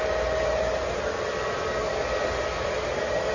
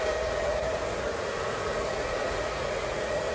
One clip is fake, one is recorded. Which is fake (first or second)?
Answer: second